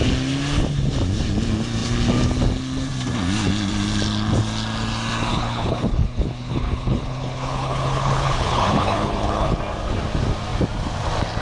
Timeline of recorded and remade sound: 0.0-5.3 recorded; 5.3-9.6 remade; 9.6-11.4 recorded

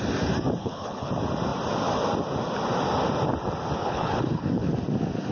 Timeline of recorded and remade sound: 0.0-0.6 recorded; 0.6-1.1 remade; 1.1-3.8 recorded; 3.8-4.7 remade; 4.7-5.3 recorded

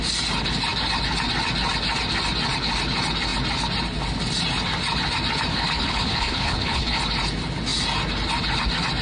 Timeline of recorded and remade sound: 0.0-5.5 recorded; 5.5-7.0 remade; 7.0-9.0 recorded

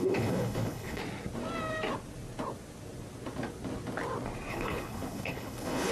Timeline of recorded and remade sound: 0.0-1.0 remade; 1.0-4.5 recorded; 4.5-5.9 remade

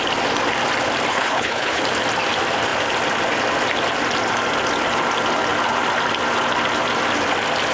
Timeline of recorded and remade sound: 0.0-1.1 recorded; 1.1-1.8 remade; 1.8-7.7 recorded